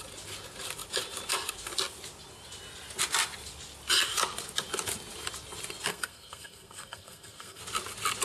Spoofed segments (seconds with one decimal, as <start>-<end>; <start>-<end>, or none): 5.9-7.6